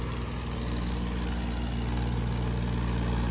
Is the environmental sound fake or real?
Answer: real